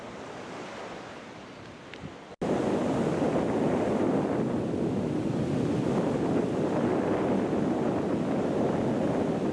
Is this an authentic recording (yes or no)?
yes